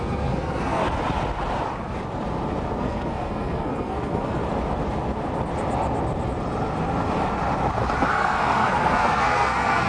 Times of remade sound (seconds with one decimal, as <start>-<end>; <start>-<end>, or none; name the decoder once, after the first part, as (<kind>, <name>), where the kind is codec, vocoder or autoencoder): 0.0-0.8 (codec, SNAC); 2.8-4.4; 8.1-9.9

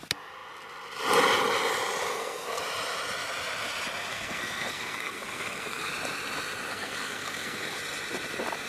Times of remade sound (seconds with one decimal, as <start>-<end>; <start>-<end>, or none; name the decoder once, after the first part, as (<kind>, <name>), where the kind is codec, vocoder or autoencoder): 2.1-2.6 (codec, SNAC); 4.1-5.9; 6.7-7.8